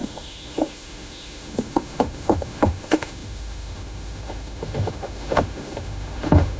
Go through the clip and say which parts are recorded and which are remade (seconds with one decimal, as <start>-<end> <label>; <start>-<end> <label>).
0.0-6.6 remade